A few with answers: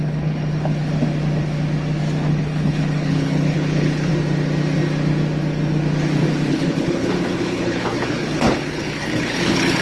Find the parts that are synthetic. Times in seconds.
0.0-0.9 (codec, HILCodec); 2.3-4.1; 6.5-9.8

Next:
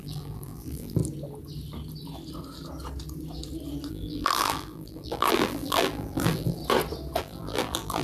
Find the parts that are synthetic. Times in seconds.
0.0-1.0 (vocoder, BigVGAN v2); 3.9-6.6; 7.2-8.0

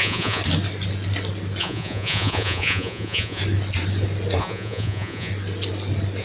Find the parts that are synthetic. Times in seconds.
0.0-0.4 (vocoder, Vocos); 1.6-3.4; 4.4-5.3

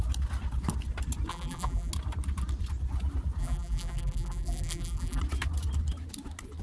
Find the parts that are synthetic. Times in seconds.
1.3-1.9 (vocoder, BigVGAN v2); 3.4-5.2